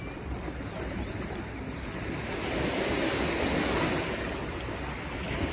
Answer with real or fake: real